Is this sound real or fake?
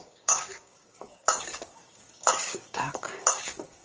fake